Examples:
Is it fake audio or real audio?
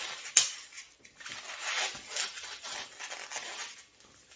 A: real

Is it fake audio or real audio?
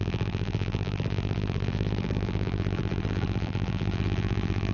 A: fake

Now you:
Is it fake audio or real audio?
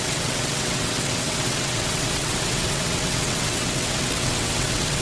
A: fake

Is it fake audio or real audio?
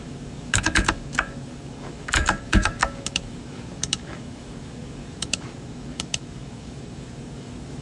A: fake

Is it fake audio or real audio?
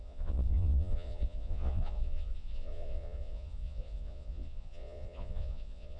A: fake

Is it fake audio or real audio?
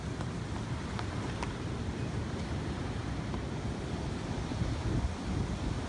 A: real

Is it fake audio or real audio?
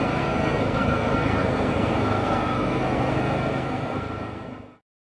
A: fake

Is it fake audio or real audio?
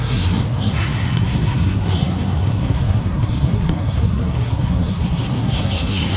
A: fake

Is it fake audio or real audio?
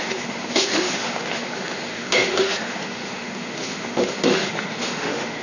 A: fake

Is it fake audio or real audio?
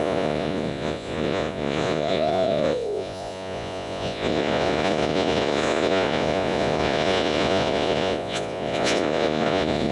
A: fake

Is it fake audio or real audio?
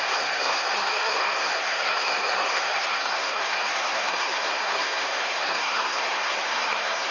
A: fake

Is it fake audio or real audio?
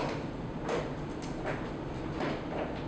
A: real